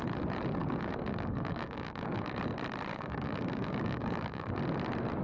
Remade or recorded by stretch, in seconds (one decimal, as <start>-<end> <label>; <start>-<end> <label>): 0.0-0.6 recorded; 0.6-2.4 remade; 2.4-2.9 recorded; 2.9-4.6 remade; 4.6-5.2 recorded